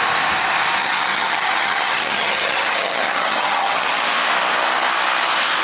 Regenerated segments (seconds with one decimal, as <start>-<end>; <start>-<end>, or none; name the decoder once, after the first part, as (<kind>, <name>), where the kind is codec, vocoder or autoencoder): 0.8-3.9 (vocoder, HiFi-GAN)